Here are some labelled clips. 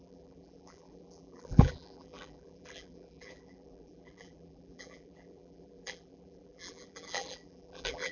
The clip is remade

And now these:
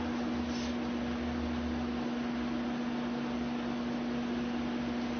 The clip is recorded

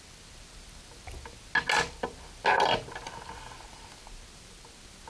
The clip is recorded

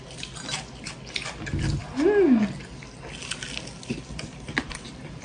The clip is recorded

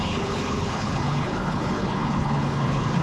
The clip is remade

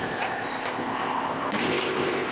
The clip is remade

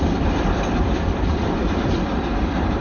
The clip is remade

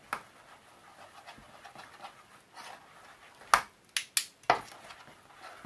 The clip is recorded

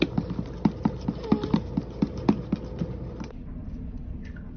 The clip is recorded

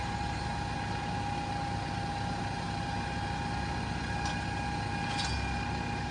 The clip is recorded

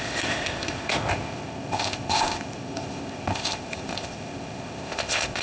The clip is remade